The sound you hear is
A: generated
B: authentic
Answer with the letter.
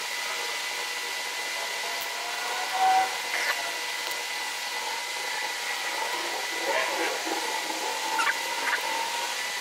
B